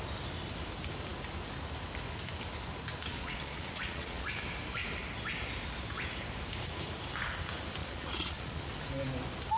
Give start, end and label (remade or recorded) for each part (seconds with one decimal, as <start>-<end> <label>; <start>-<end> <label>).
0.0-3.1 recorded; 3.1-4.3 remade; 4.3-7.8 recorded; 7.8-8.7 remade; 8.7-9.6 recorded